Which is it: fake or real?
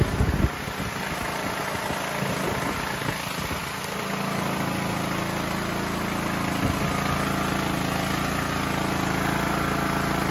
real